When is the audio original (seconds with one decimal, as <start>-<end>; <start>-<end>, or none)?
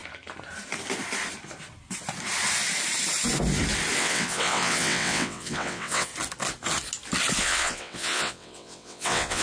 0.0-4.0; 6.1-7.4